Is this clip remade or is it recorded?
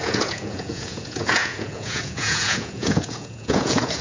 remade